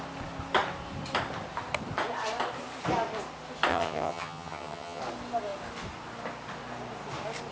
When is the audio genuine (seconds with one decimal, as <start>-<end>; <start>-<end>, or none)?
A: 0.0-3.7; 5.0-7.5